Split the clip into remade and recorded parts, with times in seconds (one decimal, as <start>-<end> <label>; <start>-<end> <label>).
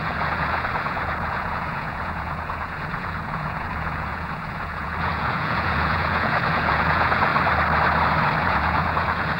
0.0-7.3 remade; 7.3-8.4 recorded; 8.4-9.4 remade